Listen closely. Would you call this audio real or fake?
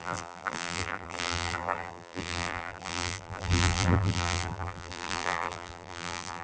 fake